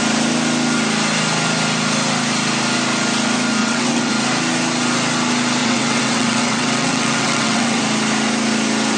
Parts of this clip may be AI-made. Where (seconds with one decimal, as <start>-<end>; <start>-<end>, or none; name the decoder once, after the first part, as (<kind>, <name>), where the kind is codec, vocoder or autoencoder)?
3.6-4.1 (vocoder, WaveNeXt); 5.6-7.8